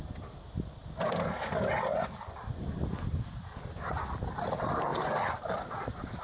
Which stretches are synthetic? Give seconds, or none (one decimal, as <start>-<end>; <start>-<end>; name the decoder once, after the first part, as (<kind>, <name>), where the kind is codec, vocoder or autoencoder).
4.9-5.5 (vocoder, BigVGAN v2)